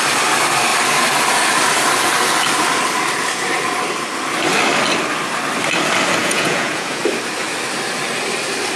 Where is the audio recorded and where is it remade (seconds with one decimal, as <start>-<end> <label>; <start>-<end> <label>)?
0.0-6.2 recorded; 6.2-7.0 remade; 7.0-8.8 recorded